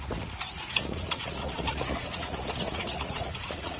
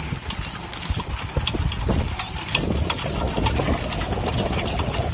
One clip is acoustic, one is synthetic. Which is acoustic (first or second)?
second